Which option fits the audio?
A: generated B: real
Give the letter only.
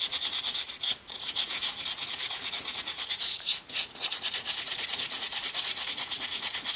A